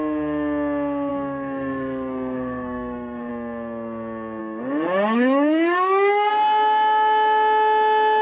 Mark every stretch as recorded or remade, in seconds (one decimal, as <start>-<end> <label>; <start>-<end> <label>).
0.0-1.1 recorded; 1.1-3.3 remade; 3.3-4.4 recorded; 4.4-6.3 remade; 6.3-8.2 recorded